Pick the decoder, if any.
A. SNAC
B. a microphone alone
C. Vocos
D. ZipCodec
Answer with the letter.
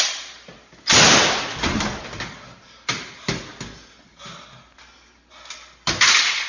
B